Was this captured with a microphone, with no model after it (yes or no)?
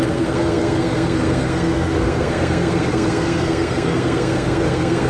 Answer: no